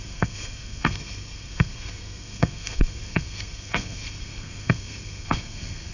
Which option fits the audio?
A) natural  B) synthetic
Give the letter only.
B